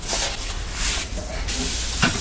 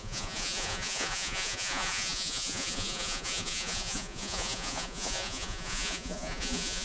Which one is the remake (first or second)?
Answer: second